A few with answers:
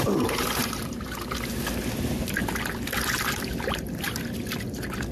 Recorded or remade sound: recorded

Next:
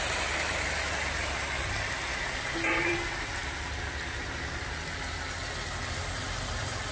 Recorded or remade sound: recorded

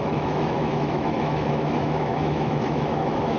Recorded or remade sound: remade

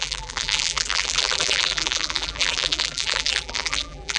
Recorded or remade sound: remade